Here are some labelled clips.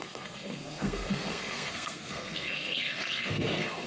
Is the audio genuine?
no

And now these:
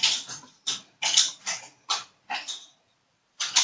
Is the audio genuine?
yes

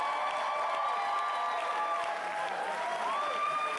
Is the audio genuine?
yes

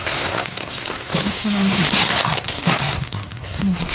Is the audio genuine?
no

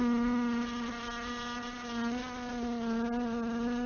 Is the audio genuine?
yes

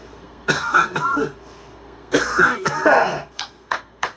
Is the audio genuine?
no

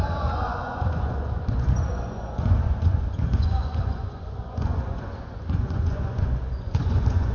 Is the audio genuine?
no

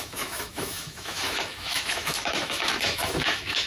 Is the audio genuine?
no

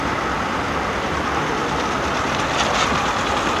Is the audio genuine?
yes